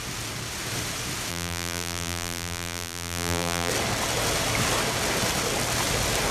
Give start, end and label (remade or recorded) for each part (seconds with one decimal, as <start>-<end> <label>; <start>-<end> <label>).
0.0-1.3 recorded; 1.3-3.7 remade; 3.7-6.3 recorded